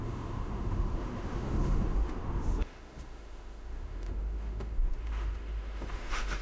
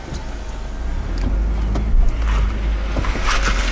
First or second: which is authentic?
second